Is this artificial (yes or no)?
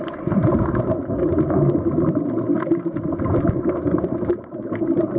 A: no